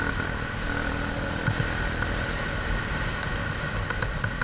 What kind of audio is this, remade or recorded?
remade